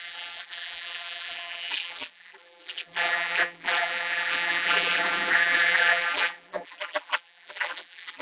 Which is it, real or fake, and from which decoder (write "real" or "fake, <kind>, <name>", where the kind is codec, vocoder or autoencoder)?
fake, vocoder, BigVGAN v2